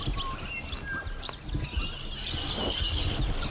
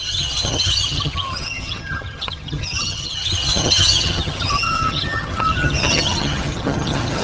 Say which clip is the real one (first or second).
first